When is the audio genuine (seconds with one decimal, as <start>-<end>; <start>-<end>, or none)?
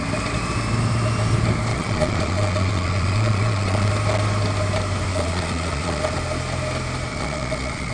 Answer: 0.0-1.7; 3.9-5.1; 6.0-7.1